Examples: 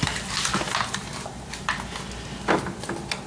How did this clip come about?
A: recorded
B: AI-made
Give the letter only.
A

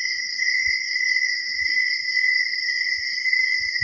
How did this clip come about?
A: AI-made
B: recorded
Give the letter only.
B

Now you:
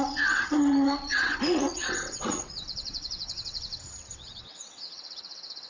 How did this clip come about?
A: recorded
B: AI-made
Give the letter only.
B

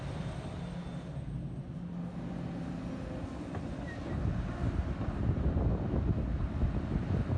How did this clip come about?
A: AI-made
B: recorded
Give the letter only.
B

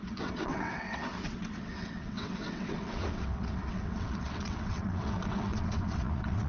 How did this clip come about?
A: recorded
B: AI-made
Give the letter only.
B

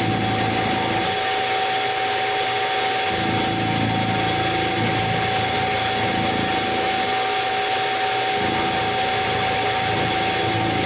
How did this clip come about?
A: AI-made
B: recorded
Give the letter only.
B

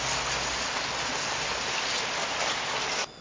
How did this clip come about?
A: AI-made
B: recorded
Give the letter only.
B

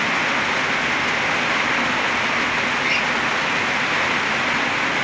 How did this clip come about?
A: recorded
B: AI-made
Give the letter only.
A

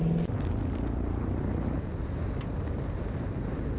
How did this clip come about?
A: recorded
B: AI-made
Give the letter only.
A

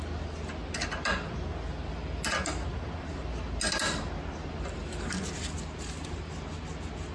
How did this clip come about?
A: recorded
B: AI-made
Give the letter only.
A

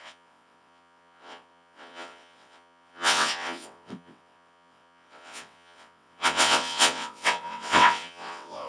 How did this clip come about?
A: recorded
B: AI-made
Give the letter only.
B